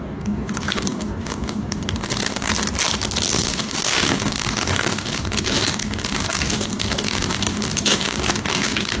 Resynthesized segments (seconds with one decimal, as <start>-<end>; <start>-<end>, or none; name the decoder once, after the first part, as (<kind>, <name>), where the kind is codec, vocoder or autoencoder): 0.0-2.5 (codec, DAC); 3.3-9.0